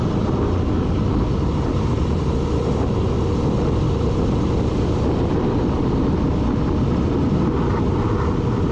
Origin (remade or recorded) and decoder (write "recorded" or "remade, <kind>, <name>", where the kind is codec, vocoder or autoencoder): recorded